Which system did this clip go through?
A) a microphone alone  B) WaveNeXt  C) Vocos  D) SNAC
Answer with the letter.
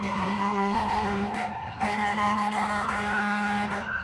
D